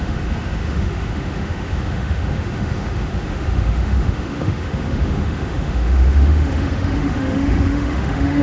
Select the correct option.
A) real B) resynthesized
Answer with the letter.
B